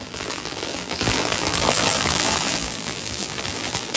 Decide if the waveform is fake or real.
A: fake